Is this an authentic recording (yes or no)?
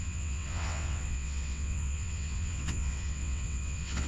no